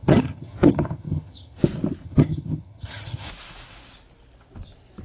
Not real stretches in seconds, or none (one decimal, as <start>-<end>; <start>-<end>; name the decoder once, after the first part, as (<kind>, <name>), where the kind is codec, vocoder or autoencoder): 0.0-1.6 (vocoder, HiFi-GAN); 2.0-3.3